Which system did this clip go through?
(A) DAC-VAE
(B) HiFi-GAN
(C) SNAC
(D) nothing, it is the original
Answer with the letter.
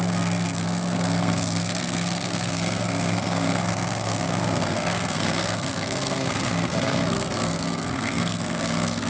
C